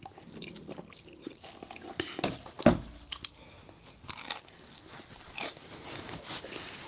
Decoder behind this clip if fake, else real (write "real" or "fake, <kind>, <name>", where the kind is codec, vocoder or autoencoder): real